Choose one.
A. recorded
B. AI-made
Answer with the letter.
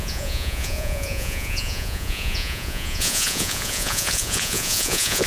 B